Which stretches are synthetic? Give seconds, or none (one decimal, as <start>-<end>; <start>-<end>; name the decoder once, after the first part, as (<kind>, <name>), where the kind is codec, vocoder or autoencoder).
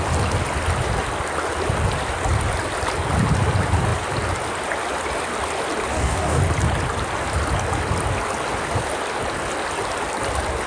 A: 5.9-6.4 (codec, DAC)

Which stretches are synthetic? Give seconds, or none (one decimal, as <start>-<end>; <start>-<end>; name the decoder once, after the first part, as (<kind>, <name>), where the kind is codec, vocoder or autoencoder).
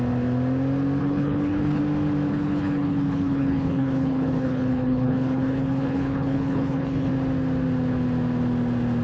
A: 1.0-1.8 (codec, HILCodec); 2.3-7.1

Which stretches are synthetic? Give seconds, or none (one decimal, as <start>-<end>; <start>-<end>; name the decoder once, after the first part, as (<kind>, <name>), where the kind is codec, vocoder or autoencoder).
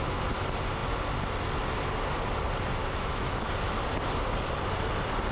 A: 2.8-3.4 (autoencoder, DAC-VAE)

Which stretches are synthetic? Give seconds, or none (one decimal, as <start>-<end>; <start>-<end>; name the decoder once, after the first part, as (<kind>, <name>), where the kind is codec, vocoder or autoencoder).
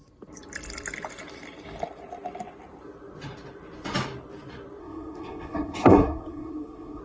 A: 4.8-7.0 (codec, SNAC)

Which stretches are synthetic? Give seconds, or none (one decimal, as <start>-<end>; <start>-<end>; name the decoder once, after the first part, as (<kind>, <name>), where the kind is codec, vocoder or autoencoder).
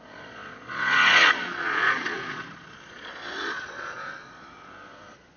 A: 0.0-5.4 (vocoder, Vocos)